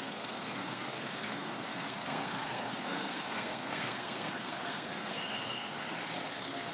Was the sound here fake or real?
fake